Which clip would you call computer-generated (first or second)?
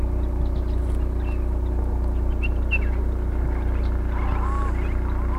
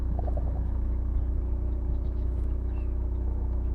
second